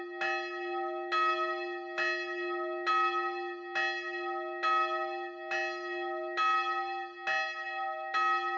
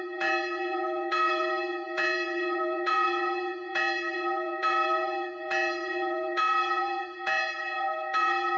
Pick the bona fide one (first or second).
first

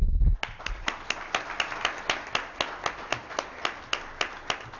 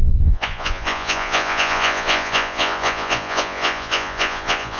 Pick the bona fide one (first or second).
first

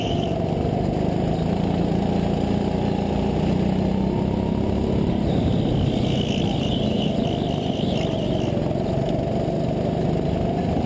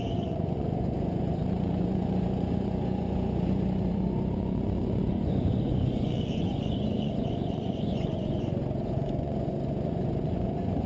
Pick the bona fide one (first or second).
first